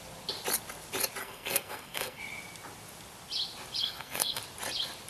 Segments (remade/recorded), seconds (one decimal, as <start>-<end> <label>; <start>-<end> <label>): 0.0-1.2 recorded; 1.2-2.2 remade; 2.2-3.8 recorded; 3.8-4.4 remade; 4.4-5.1 recorded